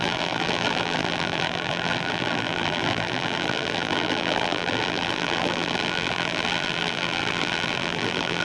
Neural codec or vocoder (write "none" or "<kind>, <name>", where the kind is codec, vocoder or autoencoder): vocoder, BigVGAN v2